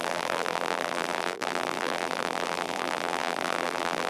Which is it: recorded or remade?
remade